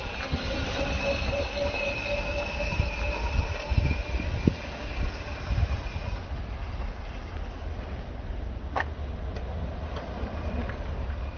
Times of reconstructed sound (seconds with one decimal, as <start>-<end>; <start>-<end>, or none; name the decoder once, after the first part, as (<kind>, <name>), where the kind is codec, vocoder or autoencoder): none